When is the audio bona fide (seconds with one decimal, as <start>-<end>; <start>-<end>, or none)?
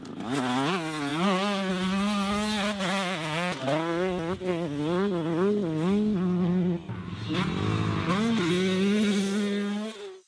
0.0-10.3